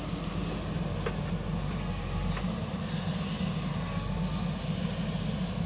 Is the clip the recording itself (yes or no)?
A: yes